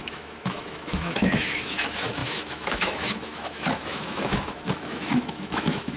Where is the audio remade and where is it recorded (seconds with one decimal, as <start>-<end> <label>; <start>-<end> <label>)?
0.0-6.0 remade